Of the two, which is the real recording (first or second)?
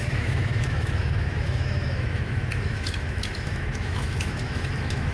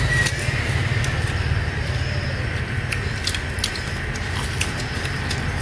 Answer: second